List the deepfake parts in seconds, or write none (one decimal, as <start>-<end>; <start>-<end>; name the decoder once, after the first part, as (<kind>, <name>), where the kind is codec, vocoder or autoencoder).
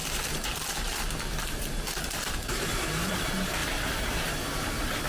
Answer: 0.0-3.1 (vocoder, BigVGAN v2)